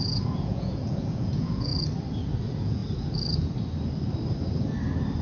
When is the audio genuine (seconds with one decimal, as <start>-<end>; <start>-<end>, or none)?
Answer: 1.7-2.4; 2.8-5.2